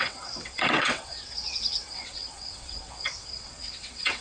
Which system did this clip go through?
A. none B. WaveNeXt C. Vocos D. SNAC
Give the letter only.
B